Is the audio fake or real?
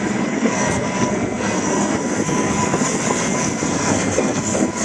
fake